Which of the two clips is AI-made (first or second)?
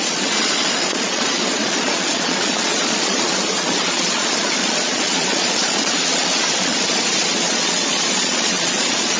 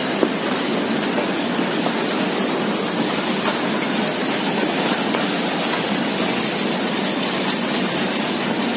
first